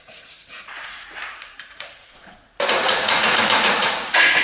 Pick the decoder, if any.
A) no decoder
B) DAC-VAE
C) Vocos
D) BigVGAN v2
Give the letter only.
C